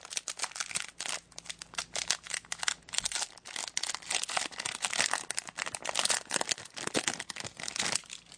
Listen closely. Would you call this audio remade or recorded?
recorded